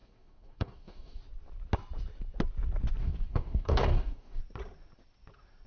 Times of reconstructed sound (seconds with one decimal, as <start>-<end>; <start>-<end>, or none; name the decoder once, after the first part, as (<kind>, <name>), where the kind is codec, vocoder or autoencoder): 0.0-1.2 (codec, DAC); 3.0-4.4